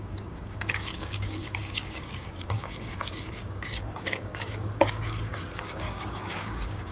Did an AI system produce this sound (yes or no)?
yes